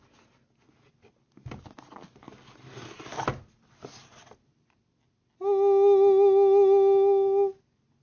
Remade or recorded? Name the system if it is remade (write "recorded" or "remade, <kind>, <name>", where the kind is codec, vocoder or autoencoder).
recorded